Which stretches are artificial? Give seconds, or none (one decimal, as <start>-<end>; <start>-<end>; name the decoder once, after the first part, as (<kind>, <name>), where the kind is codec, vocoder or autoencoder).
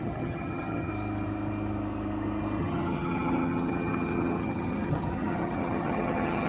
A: 0.0-0.9 (vocoder, HiFi-GAN); 2.6-6.5